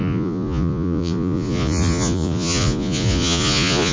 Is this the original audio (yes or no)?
no